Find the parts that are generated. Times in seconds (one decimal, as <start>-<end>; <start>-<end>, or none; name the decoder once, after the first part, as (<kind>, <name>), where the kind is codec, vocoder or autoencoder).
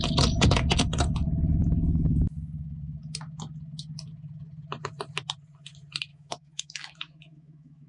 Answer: 6.1-7.9 (autoencoder, DAC-VAE)